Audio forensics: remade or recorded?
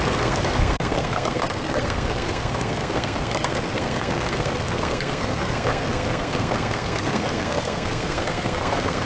remade